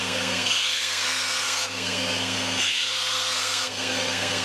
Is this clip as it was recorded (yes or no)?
no